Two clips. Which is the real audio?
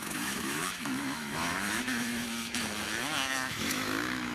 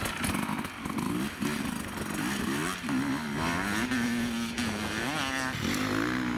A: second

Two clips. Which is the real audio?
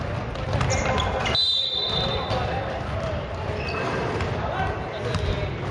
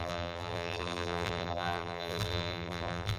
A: first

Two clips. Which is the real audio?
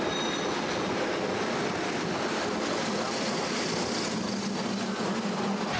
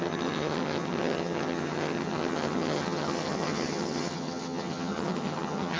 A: first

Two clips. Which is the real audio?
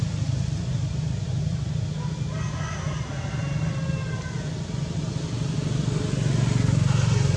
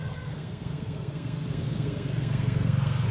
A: first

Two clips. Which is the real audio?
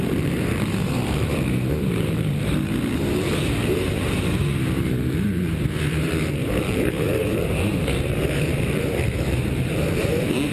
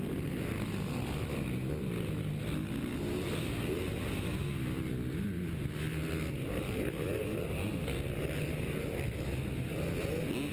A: second